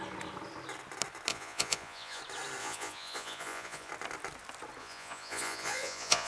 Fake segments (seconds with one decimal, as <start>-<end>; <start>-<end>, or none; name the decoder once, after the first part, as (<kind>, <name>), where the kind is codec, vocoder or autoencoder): 1.3-2.2 (vocoder, Vocos); 2.6-3.9; 4.8-6.3